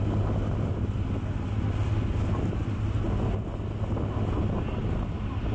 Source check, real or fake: real